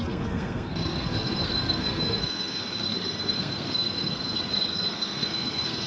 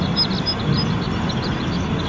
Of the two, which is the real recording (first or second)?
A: second